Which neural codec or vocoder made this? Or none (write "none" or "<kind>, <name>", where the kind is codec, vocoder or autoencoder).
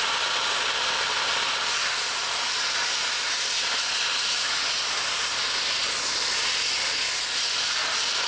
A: none